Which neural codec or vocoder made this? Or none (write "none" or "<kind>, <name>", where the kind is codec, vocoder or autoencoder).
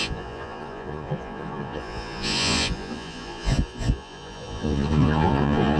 vocoder, Vocos